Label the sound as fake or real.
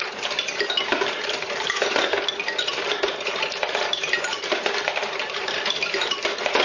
fake